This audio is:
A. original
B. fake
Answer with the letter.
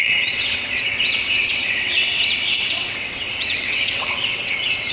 B